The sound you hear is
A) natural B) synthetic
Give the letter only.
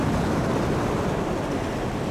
A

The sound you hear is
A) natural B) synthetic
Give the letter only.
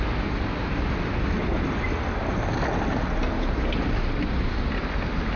A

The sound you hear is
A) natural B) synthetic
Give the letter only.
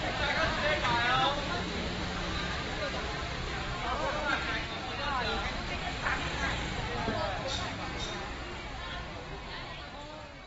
A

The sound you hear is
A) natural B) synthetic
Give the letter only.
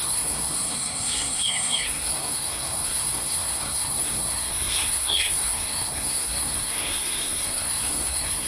B